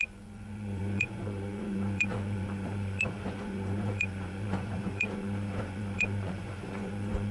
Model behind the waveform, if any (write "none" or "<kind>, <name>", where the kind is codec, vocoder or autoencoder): vocoder, Vocos